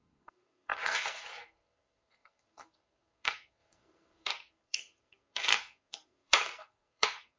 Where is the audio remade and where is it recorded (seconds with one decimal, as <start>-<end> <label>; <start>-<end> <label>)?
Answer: 0.0-7.4 remade